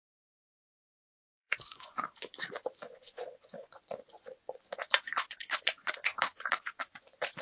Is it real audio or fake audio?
fake